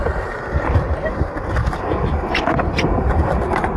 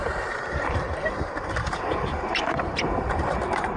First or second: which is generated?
second